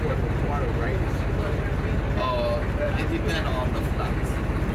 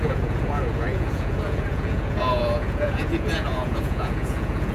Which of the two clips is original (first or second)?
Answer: first